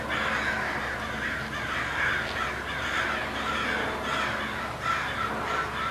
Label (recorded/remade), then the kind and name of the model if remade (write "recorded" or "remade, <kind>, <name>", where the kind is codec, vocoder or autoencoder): recorded